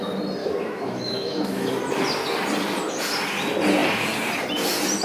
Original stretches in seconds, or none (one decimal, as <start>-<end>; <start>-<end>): 0.0-0.4; 1.7-5.0